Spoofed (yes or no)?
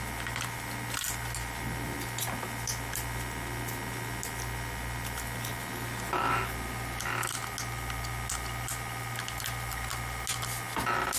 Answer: no